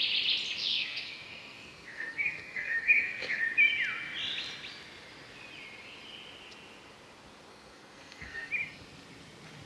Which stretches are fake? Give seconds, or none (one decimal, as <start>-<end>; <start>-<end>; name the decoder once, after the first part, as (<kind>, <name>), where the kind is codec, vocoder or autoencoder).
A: 0.7-3.4 (codec, SNAC); 7.5-8.5